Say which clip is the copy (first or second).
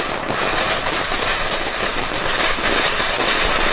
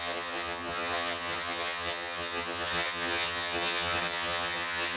second